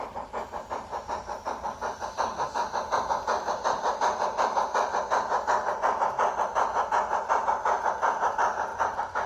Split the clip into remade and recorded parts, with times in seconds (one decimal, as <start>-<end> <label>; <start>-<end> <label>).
0.0-9.3 recorded